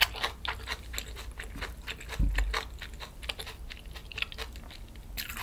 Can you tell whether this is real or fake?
real